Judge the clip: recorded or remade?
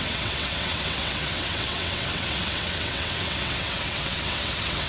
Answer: remade